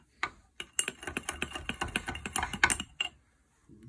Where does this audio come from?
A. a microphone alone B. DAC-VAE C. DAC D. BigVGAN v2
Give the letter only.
A